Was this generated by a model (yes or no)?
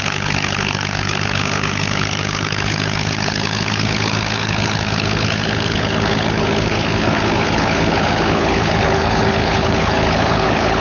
yes